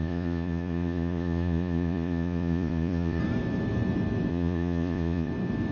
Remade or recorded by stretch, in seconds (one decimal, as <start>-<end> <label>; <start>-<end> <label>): 0.0-3.2 remade; 3.2-4.3 recorded; 4.3-5.3 remade; 5.3-5.7 recorded